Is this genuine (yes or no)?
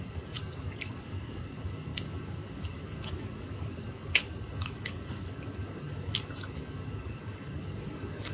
no